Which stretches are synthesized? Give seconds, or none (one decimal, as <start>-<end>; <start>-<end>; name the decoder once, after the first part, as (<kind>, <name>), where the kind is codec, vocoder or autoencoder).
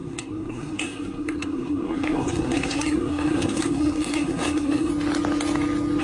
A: 0.0-4.9 (codec, SNAC)